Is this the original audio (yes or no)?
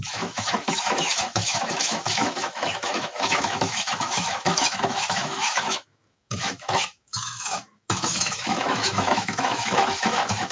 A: no